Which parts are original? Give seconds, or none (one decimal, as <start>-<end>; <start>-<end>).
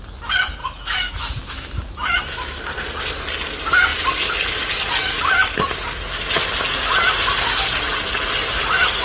0.0-0.6; 2.6-9.0